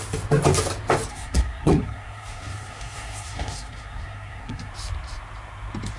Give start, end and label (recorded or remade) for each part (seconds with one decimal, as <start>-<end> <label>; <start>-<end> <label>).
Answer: 0.0-1.1 recorded; 1.1-4.7 remade; 4.7-6.0 recorded